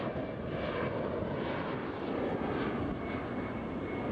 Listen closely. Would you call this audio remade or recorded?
recorded